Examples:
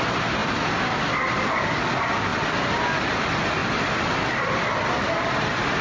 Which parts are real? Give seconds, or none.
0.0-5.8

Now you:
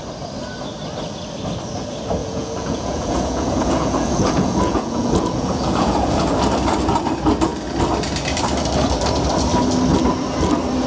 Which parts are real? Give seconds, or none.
0.0-2.2; 6.2-10.9

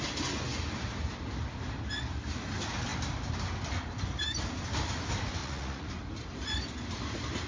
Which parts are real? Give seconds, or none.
0.0-5.4; 5.9-7.5

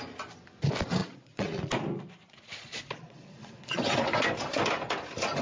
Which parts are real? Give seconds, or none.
0.0-1.0; 1.6-2.2; 3.8-5.4

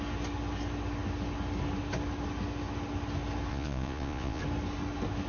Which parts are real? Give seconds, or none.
0.0-3.5; 4.4-5.3

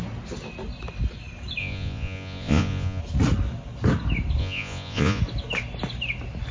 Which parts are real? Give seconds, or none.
0.0-1.6; 3.0-4.4; 5.2-6.5